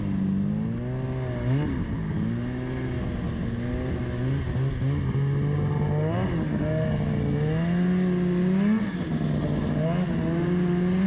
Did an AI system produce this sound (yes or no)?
no